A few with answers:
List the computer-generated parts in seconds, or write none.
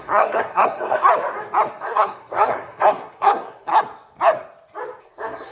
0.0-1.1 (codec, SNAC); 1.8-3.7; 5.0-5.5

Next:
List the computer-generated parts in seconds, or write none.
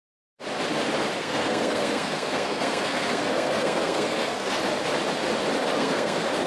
1.2-4.6 (codec, SNAC); 5.8-6.5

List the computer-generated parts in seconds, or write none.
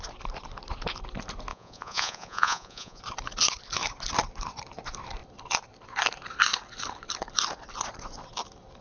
1.5-3.0 (vocoder, Vocos)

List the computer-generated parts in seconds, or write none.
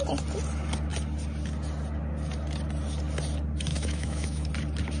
3.7-4.5 (autoencoder, DAC-VAE)